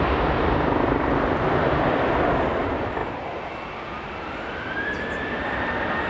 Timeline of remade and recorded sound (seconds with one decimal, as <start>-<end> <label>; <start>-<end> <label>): 0.0-3.0 remade; 3.0-5.4 recorded; 5.4-6.1 remade

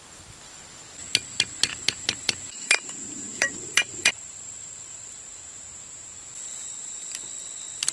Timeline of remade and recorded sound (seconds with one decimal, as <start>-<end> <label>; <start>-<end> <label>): 0.0-1.7 recorded; 1.7-5.1 remade; 5.1-7.9 recorded

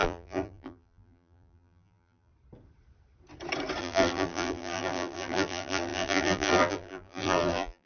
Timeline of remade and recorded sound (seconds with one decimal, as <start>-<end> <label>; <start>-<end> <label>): 0.0-2.3 remade; 2.3-3.8 recorded; 3.8-7.9 remade

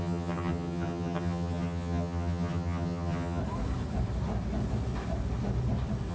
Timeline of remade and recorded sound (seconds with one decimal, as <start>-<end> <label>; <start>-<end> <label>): 0.0-3.4 remade; 3.4-6.1 recorded